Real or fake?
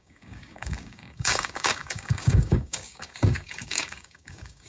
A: fake